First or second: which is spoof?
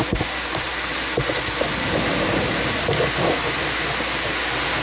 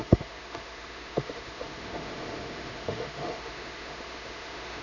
second